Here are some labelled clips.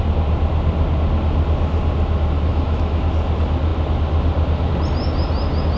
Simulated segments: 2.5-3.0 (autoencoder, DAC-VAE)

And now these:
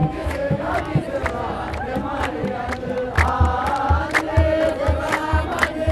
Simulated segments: 0.0-0.7 (autoencoder, DAC-VAE)

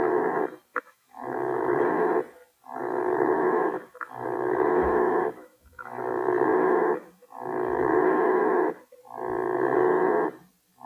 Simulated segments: 0.7-2.1 (autoencoder, DAC-VAE); 2.8-6.0; 6.5-8.8

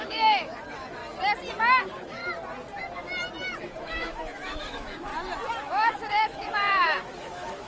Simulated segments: 0.0-1.0 (autoencoder, DAC-VAE); 1.8-2.2; 3.6-5.1; 5.7-7.7

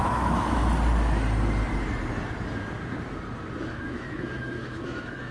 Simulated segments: 0.0-0.6 (autoencoder, DAC-VAE); 3.7-5.3

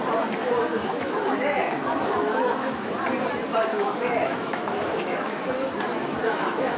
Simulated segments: 0.8-2.9 (autoencoder, DAC-VAE); 3.7-5.5; 5.9-6.8

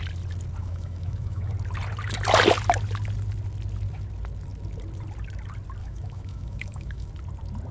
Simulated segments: 0.6-1.5 (autoencoder, DAC-VAE); 5.8-7.1